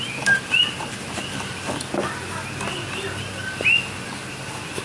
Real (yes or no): yes